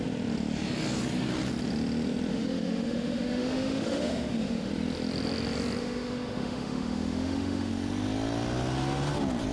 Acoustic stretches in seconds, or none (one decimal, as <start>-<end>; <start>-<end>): 0.0-2.3; 4.7-5.8; 7.7-9.5